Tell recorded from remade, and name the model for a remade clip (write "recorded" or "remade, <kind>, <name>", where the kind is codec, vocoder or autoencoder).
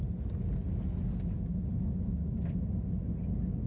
recorded